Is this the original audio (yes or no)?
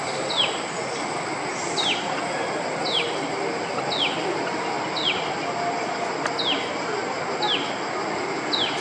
yes